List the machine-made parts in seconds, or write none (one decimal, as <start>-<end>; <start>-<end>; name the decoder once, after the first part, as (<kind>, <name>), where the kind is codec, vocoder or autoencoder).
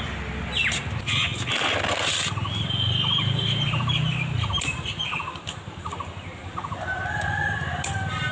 none